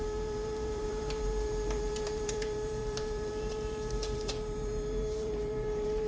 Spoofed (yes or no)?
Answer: yes